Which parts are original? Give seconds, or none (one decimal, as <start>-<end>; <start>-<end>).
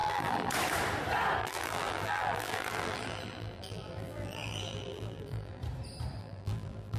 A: 0.5-1.4; 5.6-6.2